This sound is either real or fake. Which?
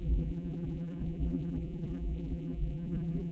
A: fake